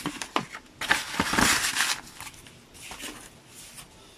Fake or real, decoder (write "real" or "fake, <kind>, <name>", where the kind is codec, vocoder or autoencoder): real